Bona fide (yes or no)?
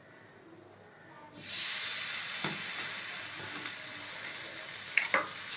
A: yes